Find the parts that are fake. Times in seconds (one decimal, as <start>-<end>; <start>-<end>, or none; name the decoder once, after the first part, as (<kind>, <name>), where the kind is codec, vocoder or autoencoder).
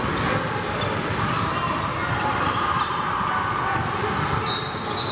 none